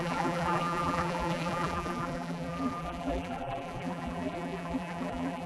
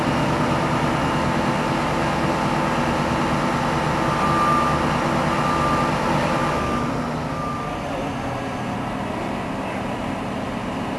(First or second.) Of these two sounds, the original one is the second